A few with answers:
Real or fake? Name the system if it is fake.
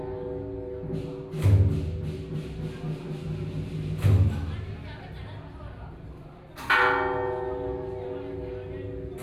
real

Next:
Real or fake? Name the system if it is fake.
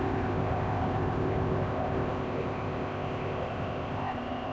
fake, codec, ZipCodec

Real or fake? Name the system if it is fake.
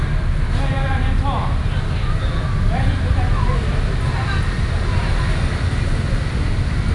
real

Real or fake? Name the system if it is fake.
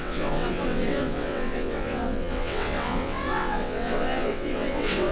fake, vocoder, WaveNeXt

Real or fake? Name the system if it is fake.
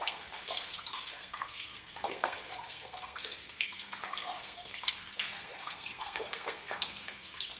fake, codec, SNAC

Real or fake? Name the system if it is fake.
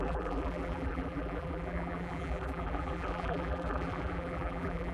fake, vocoder, BigVGAN v2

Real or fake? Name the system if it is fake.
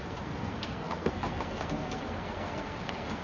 fake, codec, SNAC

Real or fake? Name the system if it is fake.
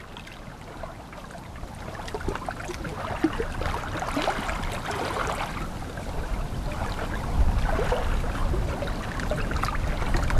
real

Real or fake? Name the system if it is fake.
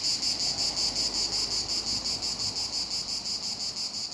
real